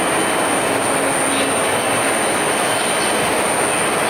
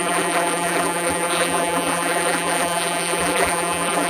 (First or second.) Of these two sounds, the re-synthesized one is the second